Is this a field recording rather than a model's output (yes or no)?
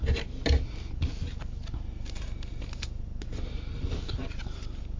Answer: yes